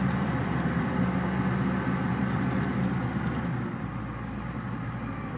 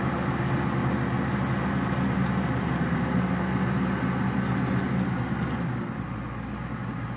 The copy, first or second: first